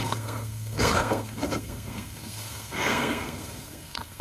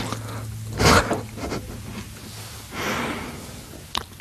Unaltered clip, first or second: second